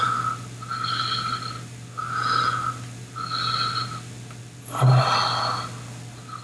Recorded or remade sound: recorded